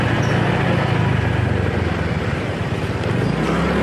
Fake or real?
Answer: real